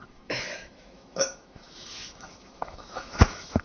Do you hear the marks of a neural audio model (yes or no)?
yes